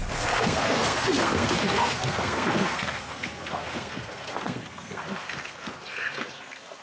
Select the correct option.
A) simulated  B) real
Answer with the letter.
A